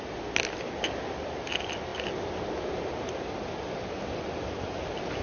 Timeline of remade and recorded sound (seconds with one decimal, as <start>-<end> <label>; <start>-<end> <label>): 0.0-5.2 recorded